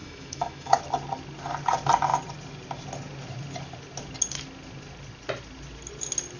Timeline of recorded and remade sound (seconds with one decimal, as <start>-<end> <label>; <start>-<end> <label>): 0.0-0.8 remade; 0.8-6.4 recorded